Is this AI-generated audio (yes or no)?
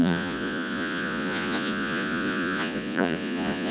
yes